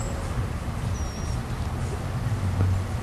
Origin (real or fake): real